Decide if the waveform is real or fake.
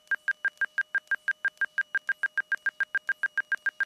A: real